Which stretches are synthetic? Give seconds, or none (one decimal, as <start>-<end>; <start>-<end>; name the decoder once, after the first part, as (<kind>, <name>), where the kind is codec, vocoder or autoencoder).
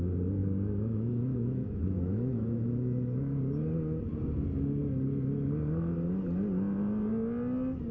0.4-3.4 (autoencoder, DAC-VAE)